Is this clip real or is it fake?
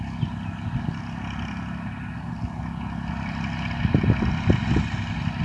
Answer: real